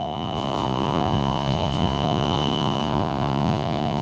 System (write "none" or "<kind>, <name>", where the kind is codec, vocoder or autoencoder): vocoder, Vocos